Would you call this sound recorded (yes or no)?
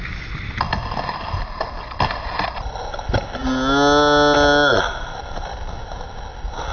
yes